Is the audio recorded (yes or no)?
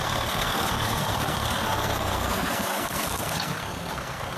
no